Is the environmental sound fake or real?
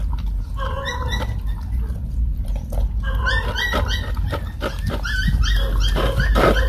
real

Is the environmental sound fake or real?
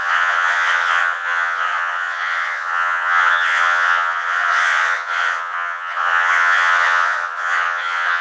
fake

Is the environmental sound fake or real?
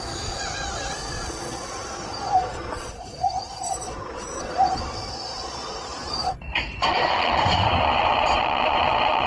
fake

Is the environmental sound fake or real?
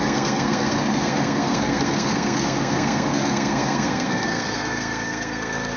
fake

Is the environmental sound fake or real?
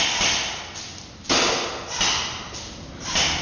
real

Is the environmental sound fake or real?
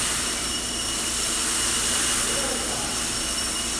fake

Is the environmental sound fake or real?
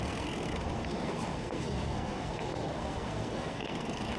fake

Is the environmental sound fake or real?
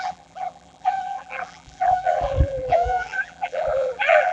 fake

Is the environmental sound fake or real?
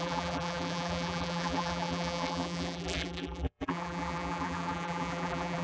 fake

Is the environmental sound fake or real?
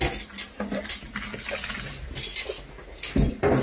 real